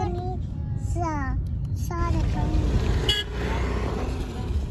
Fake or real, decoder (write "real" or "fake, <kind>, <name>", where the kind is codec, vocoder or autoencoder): real